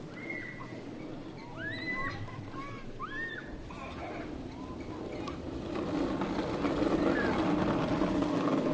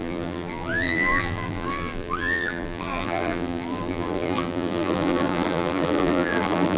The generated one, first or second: second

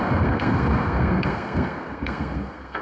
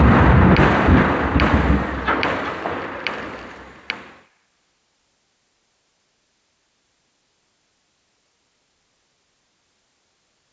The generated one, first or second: first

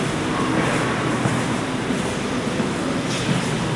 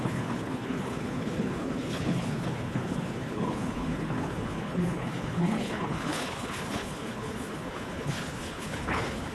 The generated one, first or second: second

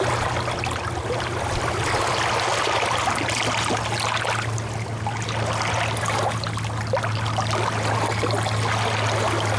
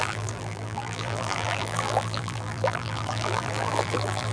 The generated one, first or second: second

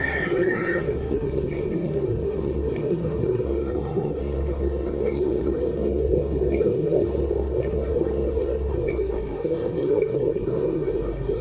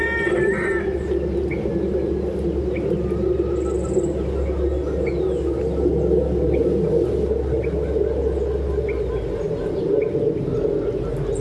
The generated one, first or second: first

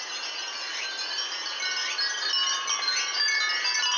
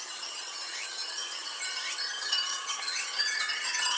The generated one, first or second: second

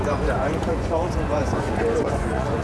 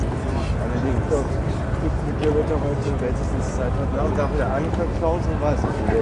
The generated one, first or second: first